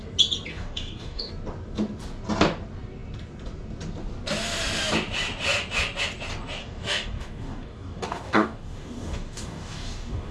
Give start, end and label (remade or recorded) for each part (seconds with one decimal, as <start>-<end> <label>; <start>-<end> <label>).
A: 0.0-0.5 recorded; 0.5-1.3 remade; 1.3-6.6 recorded; 6.6-10.3 remade